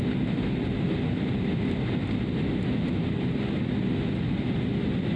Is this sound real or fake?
real